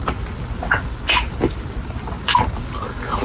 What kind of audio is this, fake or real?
real